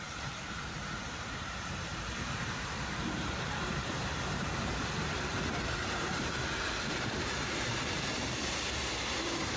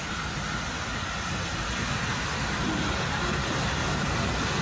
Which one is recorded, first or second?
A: second